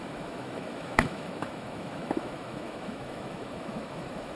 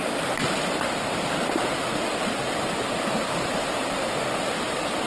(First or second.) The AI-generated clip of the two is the first